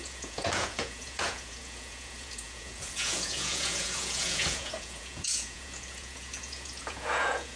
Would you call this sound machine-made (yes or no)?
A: yes